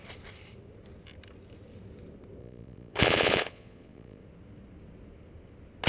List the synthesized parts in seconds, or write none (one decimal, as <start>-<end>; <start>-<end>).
2.4-4.2